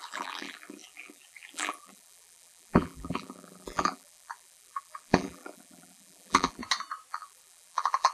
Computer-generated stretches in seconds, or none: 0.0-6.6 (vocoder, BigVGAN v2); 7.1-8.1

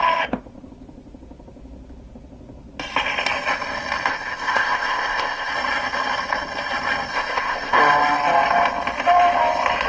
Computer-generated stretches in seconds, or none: 4.1-5.5 (codec, ZipCodec); 7.1-7.8

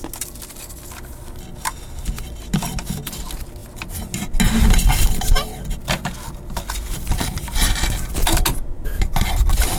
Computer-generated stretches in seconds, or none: none

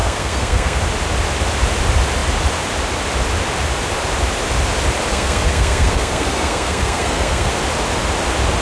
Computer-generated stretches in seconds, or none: 0.0-0.8 (codec, SNAC); 5.1-7.5

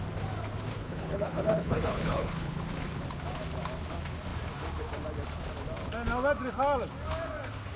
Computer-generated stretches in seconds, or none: 0.7-2.6 (codec, HILCodec)

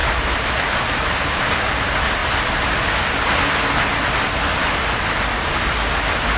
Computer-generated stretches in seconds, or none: 0.0-0.5 (vocoder, BigVGAN v2)

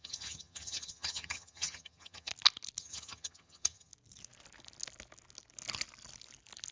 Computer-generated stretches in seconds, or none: 0.0-2.3 (vocoder, HiFi-GAN); 2.8-3.9